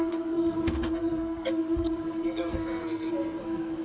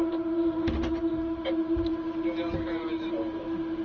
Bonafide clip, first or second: second